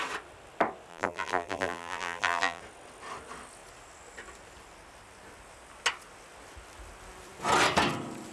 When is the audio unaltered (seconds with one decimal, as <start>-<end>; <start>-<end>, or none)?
0.0-0.9; 2.6-8.3